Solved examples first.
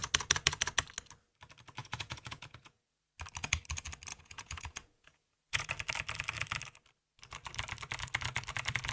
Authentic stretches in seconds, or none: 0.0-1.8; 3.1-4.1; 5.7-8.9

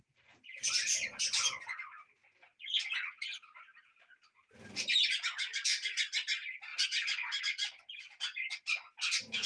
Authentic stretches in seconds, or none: 0.0-9.5

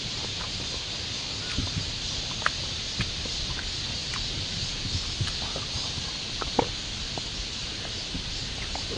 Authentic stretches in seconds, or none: 0.0-9.0

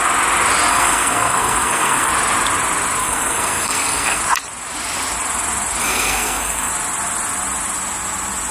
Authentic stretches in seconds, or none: 0.0-0.7; 2.1-3.0; 4.2-5.8; 6.7-8.5

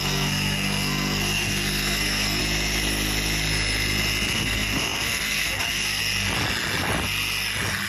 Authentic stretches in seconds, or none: 2.4-4.3; 6.0-7.9

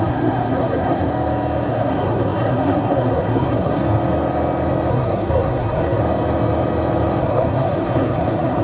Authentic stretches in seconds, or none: 1.1-1.7; 3.8-4.9; 6.0-7.2

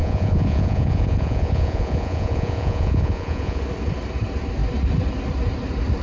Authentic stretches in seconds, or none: 3.6-6.0